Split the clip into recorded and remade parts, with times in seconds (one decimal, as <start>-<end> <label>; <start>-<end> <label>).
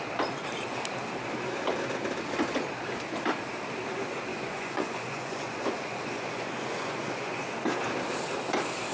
0.0-4.3 recorded; 4.3-7.4 remade; 7.4-8.9 recorded